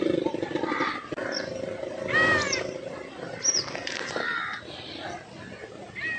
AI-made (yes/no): no